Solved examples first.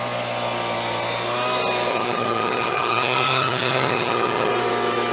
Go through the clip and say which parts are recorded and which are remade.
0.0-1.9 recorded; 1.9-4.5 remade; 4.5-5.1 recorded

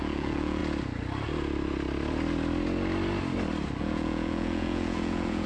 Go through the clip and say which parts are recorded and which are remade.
0.0-0.6 remade; 0.6-3.8 recorded; 3.8-5.5 remade

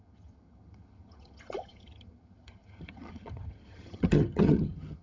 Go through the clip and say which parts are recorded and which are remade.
0.0-5.0 remade

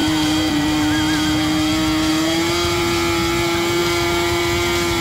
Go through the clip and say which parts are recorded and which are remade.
0.0-1.7 remade; 1.7-2.1 recorded; 2.1-2.8 remade; 2.8-3.8 recorded; 3.8-4.4 remade; 4.4-5.0 recorded

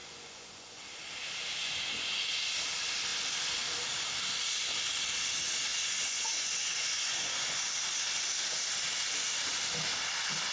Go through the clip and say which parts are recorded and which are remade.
0.0-0.8 remade; 0.8-1.6 recorded; 1.6-2.2 remade; 2.2-5.7 recorded; 5.7-7.7 remade; 7.7-10.5 recorded

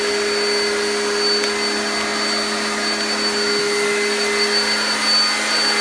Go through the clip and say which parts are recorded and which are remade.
0.0-5.8 recorded

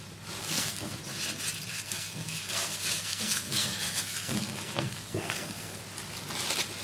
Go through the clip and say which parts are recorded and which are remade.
0.0-0.4 recorded; 0.4-1.0 remade; 1.0-1.7 recorded; 1.7-5.8 remade; 5.8-6.8 recorded